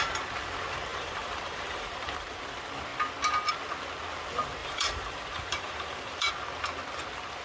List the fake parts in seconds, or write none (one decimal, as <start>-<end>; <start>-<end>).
0.9-2.4; 4.6-6.3

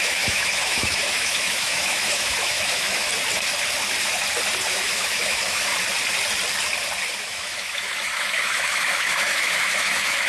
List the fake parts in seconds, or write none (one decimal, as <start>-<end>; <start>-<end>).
0.0-3.1; 4.7-5.7; 7.2-10.3

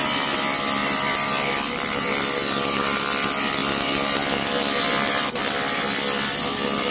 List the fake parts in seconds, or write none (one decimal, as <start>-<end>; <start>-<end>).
none

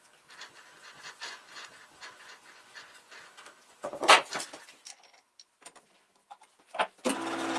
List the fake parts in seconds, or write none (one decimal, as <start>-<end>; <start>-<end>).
0.7-3.1; 3.6-4.3

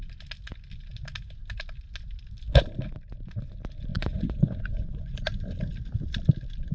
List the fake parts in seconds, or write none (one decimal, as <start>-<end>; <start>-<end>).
3.9-5.1

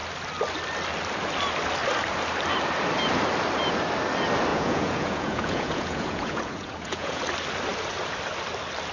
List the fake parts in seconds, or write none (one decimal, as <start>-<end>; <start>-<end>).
4.5-7.2